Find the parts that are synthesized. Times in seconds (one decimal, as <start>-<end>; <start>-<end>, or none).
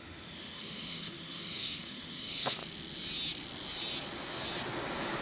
0.0-2.6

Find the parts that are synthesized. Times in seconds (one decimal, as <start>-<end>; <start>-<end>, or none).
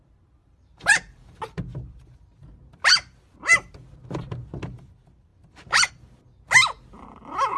0.4-1.6; 5.3-5.9